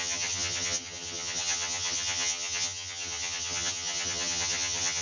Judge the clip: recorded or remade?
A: remade